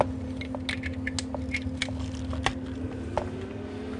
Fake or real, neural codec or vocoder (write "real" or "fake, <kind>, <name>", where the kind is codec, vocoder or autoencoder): real